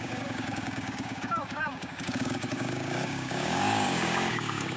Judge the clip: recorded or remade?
remade